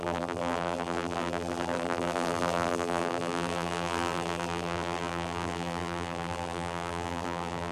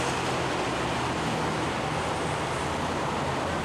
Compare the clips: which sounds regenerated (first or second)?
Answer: first